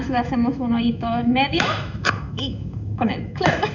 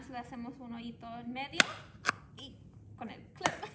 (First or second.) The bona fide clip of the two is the second